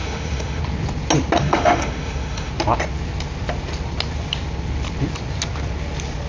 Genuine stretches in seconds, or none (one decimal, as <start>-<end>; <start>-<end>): 0.6-1.4; 2.5-6.3